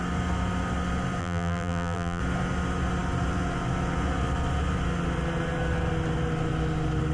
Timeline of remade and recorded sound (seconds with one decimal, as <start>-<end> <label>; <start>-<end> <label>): 0.0-1.2 recorded; 1.2-2.2 remade; 2.2-7.1 recorded